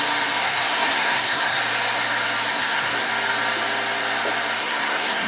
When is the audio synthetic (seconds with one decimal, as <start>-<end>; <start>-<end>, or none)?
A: 0.4-1.6; 2.5-3.1; 4.6-5.3